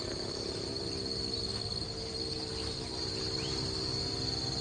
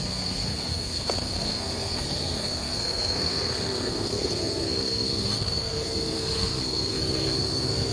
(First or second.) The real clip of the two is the first